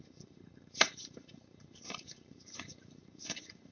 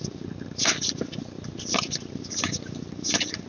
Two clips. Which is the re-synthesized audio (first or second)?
first